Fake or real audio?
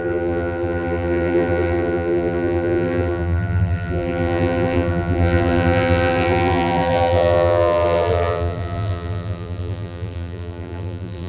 fake